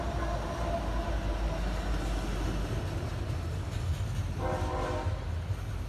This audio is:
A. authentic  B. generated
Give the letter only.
A